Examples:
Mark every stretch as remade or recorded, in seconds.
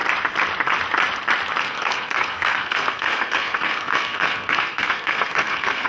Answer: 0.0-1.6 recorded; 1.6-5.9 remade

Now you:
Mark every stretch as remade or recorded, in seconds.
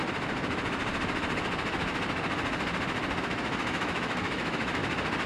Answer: 0.0-3.2 recorded; 3.2-4.8 remade; 4.8-5.3 recorded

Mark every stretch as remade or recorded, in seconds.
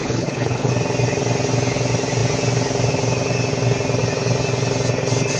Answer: 0.0-0.7 remade; 0.7-5.4 recorded